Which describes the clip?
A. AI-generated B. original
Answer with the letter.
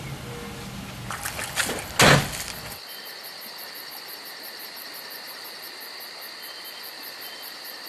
B